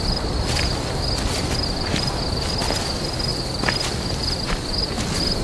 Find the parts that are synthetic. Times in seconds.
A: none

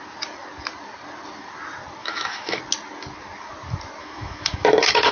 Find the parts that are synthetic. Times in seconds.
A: 2.0-2.6 (autoencoder, DAC-VAE); 4.0-5.1

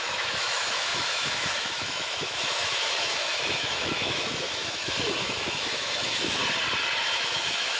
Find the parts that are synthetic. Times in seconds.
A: 0.0-6.4 (autoencoder, DAC-VAE); 7.0-7.8

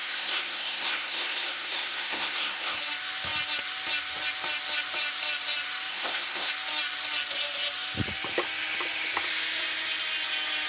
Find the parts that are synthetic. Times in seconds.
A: 0.0-2.8 (codec, SNAC); 5.9-6.5

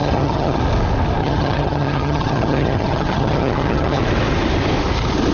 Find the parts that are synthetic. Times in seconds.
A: 0.0-0.6 (vocoder, HiFi-GAN); 1.2-4.0

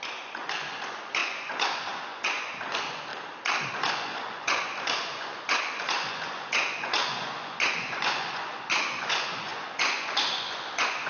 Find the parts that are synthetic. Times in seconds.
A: 0.0-3.1 (vocoder, Vocos); 3.7-11.1

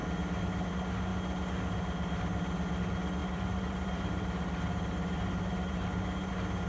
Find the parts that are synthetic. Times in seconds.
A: 3.2-6.3 (vocoder, BigVGAN v2)